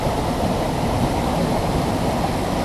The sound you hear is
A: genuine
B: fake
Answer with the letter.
A